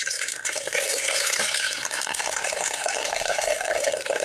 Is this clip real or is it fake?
fake